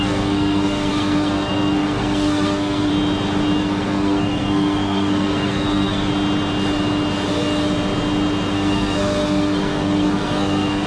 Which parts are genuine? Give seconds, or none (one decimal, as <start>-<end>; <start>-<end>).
2.9-3.6; 6.1-8.5